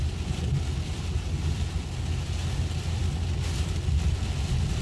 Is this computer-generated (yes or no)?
no